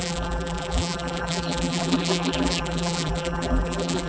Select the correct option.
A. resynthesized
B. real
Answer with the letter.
A